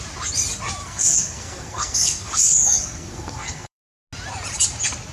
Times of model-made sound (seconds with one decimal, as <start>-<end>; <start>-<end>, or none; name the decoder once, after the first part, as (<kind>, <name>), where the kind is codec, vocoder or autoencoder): 0.8-3.9 (codec, SNAC)